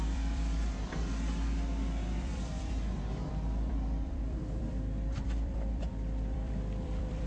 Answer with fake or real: fake